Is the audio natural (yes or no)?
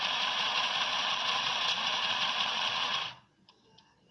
no